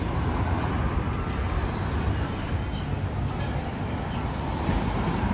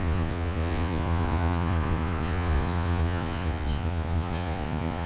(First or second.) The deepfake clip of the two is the second